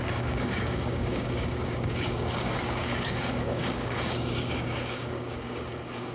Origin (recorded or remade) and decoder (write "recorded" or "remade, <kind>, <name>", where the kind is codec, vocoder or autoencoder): remade, codec, DAC